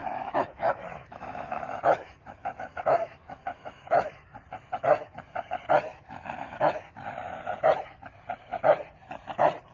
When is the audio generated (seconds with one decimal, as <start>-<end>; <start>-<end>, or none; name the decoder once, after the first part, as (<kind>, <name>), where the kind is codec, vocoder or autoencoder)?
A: 0.0-4.1 (autoencoder, DAC-VAE); 5.9-7.4